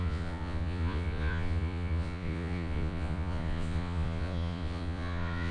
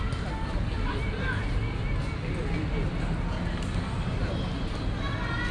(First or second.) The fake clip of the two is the first